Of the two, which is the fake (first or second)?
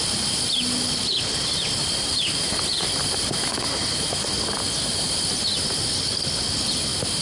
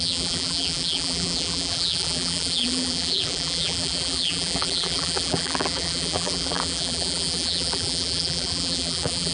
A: second